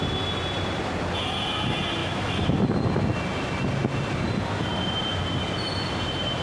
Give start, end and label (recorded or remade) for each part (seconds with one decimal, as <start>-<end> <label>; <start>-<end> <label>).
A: 0.0-2.0 recorded; 2.0-2.5 remade; 2.5-6.4 recorded

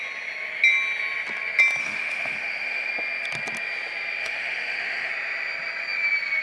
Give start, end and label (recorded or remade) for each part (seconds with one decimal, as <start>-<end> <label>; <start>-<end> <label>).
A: 0.0-1.8 recorded; 1.8-2.9 remade; 2.9-4.2 recorded; 4.2-5.1 remade; 5.1-6.4 recorded

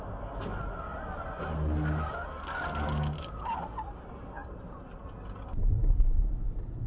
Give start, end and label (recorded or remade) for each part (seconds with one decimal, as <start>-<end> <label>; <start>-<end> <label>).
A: 0.0-6.9 recorded

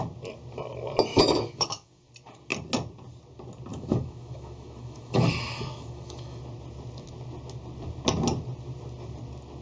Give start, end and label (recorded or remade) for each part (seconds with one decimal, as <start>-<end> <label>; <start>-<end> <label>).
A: 0.0-1.1 recorded; 1.1-2.1 remade; 2.1-3.7 recorded; 3.7-6.4 remade; 6.4-9.6 recorded

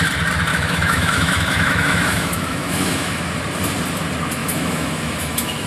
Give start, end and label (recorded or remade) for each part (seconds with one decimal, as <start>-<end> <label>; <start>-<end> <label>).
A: 0.0-0.5 recorded; 0.5-3.2 remade; 3.2-4.4 recorded; 4.4-5.7 remade

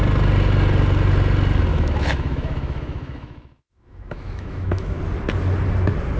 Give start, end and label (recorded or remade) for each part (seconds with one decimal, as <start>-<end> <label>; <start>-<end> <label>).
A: 0.0-1.7 recorded; 1.7-5.0 remade; 5.0-6.2 recorded